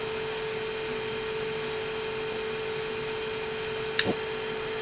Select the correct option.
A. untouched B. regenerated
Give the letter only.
A